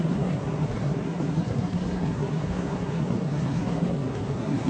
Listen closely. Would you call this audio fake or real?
fake